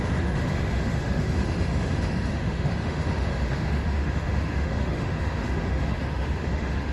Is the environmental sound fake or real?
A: fake